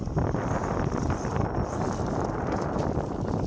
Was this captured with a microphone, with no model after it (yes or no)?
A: yes